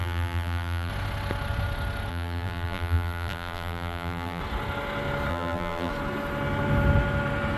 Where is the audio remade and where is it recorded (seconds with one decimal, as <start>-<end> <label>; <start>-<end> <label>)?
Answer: 0.0-0.9 remade; 0.9-2.1 recorded; 2.1-4.4 remade; 4.4-5.3 recorded; 5.3-5.9 remade; 5.9-7.6 recorded